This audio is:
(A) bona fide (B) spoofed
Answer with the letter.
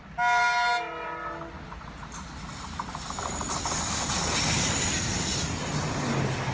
A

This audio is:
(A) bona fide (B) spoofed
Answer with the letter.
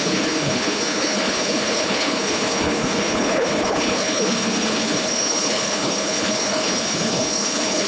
B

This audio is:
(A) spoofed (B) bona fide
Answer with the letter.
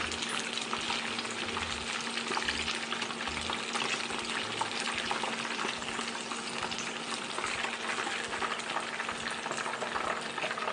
B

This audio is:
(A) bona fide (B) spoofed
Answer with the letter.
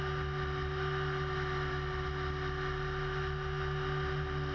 A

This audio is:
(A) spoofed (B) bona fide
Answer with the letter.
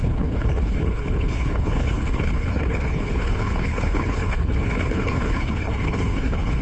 A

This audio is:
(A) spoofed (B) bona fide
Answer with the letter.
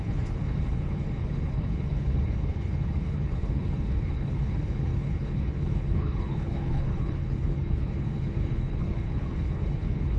A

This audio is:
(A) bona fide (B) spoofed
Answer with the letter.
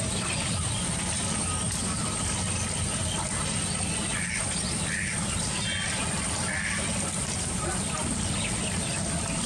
A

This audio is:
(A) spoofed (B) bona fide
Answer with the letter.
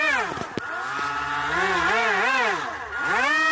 B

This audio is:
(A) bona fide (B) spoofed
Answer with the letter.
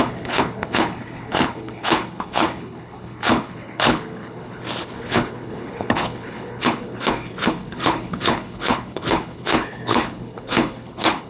B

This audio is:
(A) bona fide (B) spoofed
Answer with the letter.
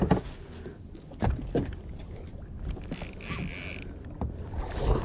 A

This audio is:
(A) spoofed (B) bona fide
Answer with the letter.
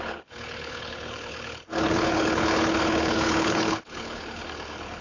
A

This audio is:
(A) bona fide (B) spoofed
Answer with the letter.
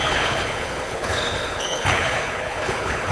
B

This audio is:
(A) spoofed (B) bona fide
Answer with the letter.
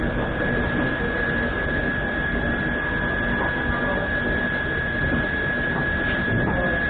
B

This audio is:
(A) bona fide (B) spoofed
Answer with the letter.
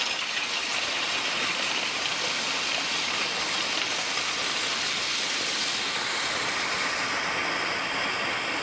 A